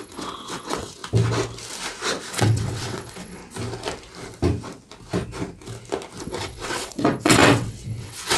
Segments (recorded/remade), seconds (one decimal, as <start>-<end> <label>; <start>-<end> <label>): 0.0-1.0 remade; 1.0-2.3 recorded; 2.3-3.4 remade; 3.4-6.2 recorded; 6.2-8.4 remade